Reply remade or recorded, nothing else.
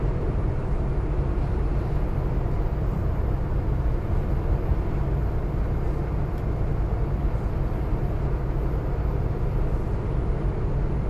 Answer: recorded